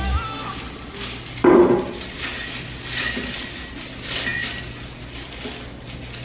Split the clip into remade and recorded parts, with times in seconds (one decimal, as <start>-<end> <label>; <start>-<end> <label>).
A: 0.0-6.2 recorded